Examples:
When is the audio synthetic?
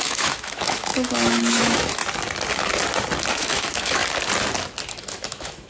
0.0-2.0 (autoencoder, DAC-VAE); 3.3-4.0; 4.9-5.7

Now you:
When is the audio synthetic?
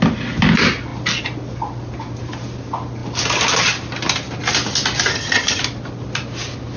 5.1-5.6 (vocoder, HiFi-GAN)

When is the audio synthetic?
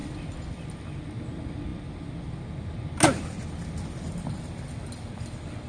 none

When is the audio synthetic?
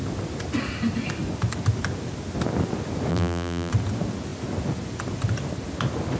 3.1-3.7 (vocoder, BigVGAN v2)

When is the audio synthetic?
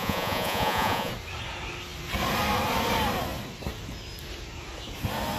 0.0-1.1 (vocoder, Vocos)